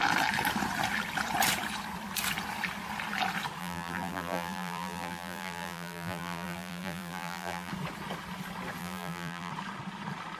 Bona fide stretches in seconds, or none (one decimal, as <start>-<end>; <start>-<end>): 0.0-3.6; 7.7-8.8; 9.5-10.4